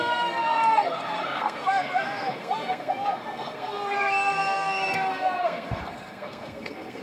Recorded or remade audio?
remade